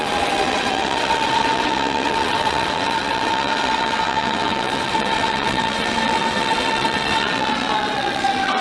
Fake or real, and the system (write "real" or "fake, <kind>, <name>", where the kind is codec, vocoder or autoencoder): fake, vocoder, WaveNeXt